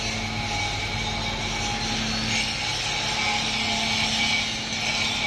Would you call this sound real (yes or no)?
yes